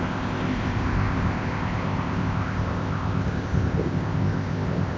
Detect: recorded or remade remade